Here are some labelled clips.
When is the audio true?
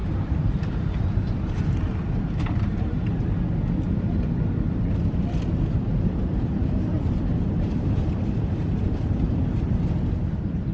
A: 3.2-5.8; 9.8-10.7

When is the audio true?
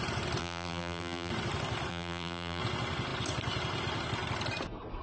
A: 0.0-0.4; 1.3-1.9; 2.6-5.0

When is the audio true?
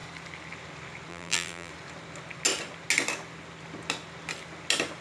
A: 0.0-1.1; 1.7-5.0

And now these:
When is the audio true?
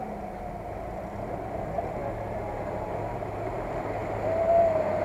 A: 0.0-5.0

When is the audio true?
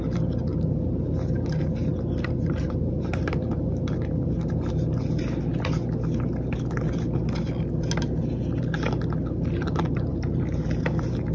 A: 0.0-0.5; 4.7-10.1; 10.8-11.3